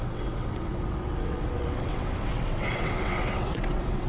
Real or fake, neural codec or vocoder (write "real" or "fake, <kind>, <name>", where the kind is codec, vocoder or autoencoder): fake, vocoder, WaveNeXt